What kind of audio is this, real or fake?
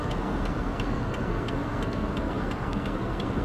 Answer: fake